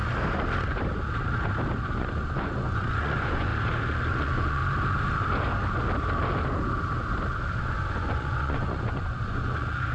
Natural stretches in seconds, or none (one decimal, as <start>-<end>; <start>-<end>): 0.0-1.9; 3.5-4.1; 4.6-7.6